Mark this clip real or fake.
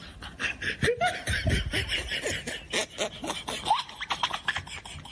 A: real